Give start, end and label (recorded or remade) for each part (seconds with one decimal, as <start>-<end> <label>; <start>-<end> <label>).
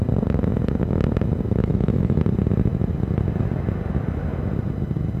0.0-1.6 recorded; 1.6-2.2 remade; 2.2-5.2 recorded